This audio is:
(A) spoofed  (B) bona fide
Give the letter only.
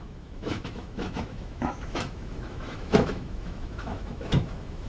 A